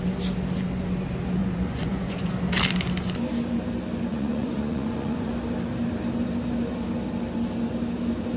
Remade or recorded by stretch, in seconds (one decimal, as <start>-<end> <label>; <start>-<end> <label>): 0.0-1.4 recorded; 1.4-2.3 remade; 2.3-4.1 recorded; 4.1-5.3 remade; 5.3-8.4 recorded